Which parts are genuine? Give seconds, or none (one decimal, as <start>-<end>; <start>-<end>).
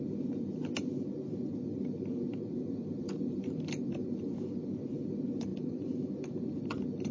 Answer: 0.0-5.5; 6.6-7.1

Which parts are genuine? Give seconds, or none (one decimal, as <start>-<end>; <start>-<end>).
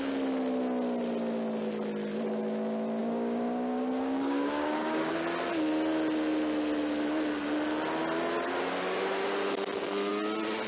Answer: 0.0-3.0; 5.1-10.7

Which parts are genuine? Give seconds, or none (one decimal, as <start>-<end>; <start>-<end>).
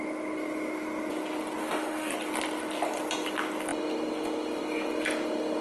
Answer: 0.0-1.6; 2.1-5.6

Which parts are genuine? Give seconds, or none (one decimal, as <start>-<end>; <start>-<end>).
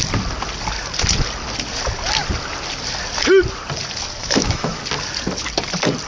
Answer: 0.0-4.2; 4.8-6.1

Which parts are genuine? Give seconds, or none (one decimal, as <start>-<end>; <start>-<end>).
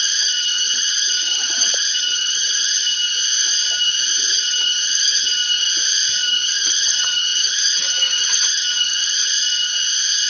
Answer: 2.8-4.3; 5.4-6.2; 9.3-10.3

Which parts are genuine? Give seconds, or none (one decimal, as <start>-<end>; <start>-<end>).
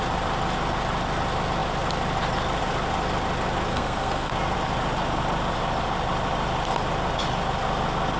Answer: 0.0-3.7; 4.3-8.2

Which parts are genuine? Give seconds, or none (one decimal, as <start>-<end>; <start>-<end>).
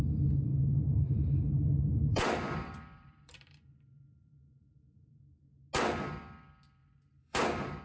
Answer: 0.0-0.5; 5.2-6.8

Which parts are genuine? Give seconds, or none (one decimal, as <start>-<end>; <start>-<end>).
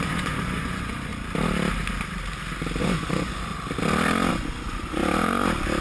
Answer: 1.1-2.8; 3.5-4.3; 5.0-5.8